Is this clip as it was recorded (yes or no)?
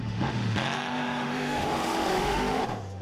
no